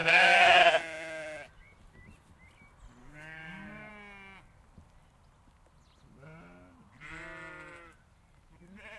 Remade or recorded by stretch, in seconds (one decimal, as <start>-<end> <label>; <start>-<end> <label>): 0.0-0.6 remade; 0.6-3.0 recorded; 3.0-3.9 remade; 3.9-9.0 recorded